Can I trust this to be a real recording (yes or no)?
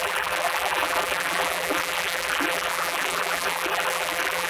no